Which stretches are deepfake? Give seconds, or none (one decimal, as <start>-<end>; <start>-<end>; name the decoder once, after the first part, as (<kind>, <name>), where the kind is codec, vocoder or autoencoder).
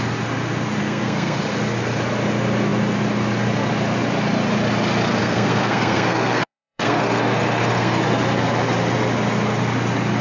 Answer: 0.8-1.4 (codec, SNAC); 5.2-8.0